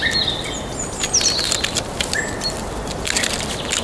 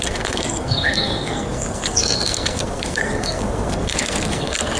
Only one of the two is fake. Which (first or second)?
second